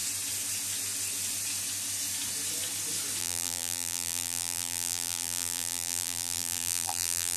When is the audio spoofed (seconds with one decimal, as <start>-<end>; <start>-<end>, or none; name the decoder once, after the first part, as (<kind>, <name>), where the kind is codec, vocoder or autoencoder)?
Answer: 3.2-7.4 (vocoder, BigVGAN v2)